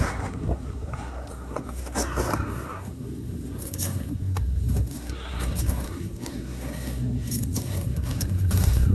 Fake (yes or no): yes